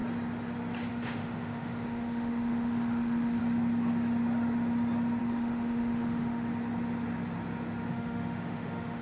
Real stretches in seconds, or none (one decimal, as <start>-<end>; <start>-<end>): 0.0-0.9; 3.4-5.2; 6.5-7.9